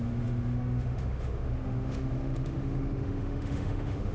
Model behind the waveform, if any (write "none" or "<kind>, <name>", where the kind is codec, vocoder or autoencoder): autoencoder, DAC-VAE